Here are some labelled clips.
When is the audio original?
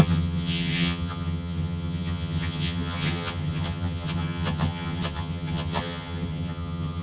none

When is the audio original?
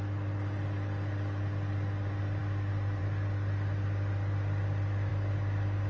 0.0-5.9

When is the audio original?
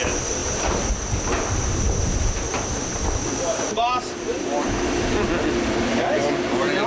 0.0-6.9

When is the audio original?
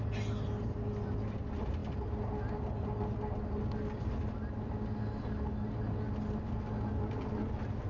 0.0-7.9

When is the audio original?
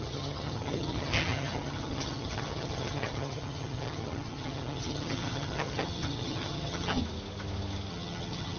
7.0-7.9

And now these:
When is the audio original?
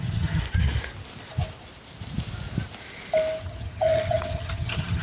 0.4-3.4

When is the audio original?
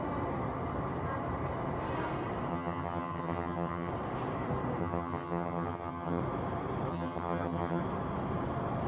0.0-2.5; 3.9-4.8; 6.2-6.9; 7.8-8.9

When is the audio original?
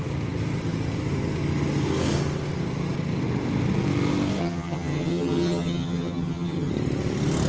0.0-4.4; 6.7-7.5